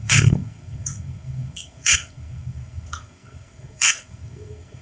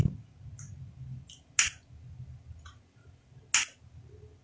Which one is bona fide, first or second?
second